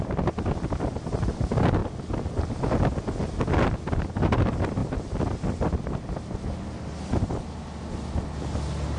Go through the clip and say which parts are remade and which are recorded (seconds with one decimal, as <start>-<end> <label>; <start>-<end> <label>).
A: 0.0-9.0 recorded